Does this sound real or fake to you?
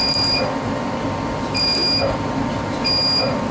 real